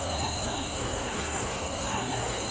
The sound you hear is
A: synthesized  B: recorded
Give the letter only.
A